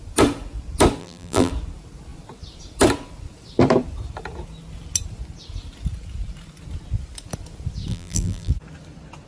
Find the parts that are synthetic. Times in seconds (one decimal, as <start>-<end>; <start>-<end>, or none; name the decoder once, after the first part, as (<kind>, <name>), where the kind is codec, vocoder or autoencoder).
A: 1.0-1.5 (vocoder, BigVGAN v2); 7.9-8.5